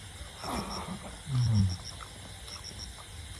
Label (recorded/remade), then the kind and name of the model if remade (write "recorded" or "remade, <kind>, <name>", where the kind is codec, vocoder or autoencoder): recorded